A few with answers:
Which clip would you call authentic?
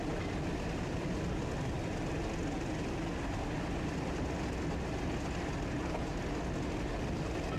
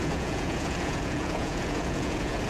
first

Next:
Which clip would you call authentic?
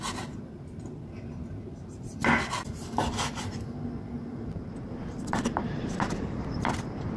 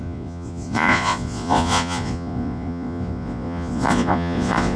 first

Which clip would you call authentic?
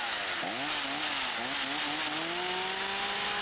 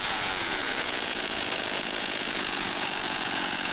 first